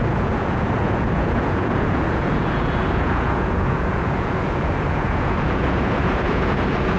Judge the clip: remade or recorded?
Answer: remade